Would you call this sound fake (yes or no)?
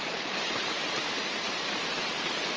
yes